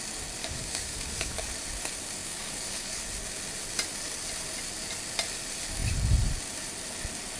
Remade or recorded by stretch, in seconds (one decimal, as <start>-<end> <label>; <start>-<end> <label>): 0.0-0.4 recorded; 0.4-1.5 remade; 1.5-2.2 recorded; 2.2-3.0 remade; 3.0-7.4 recorded